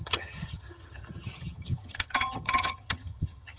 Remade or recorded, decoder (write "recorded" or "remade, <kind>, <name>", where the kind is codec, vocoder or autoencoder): remade, vocoder, HiFi-GAN